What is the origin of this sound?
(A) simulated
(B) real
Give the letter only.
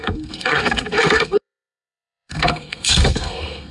A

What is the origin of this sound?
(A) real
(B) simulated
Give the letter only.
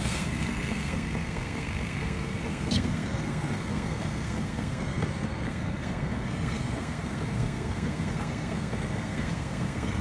B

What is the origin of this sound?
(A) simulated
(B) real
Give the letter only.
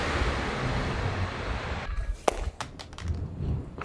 B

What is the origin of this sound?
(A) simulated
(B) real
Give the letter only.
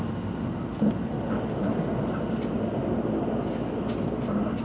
B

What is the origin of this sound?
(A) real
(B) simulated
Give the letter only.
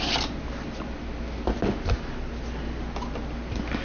A